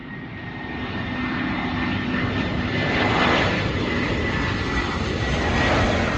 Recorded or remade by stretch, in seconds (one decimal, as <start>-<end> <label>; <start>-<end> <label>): 0.0-6.2 recorded